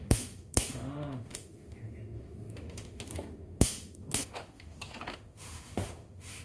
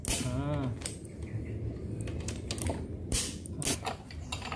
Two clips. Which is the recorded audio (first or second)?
second